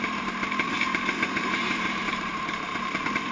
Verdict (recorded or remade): remade